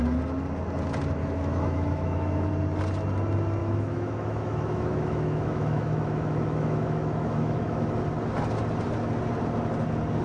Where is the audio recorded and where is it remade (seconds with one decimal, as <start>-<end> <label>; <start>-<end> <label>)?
0.0-1.2 recorded; 1.2-2.5 remade; 2.5-3.6 recorded; 3.6-8.0 remade; 8.0-10.2 recorded